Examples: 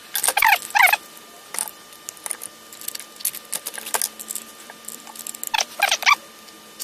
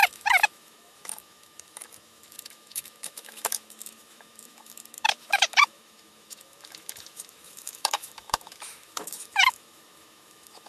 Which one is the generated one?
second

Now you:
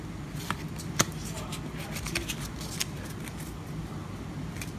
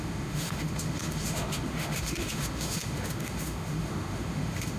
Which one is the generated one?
second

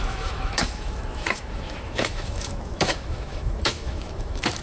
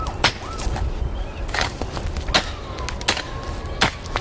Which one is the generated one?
first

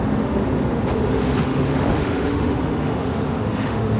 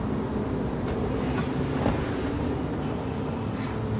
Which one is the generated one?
first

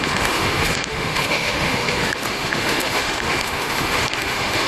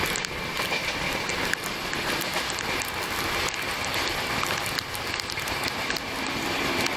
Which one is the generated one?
first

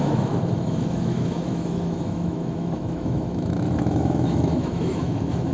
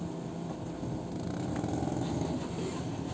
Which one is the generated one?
first